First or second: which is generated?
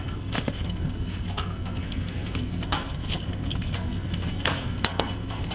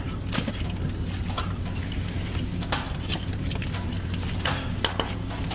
first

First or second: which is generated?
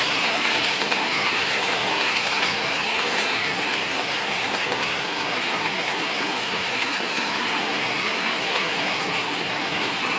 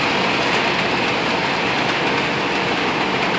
first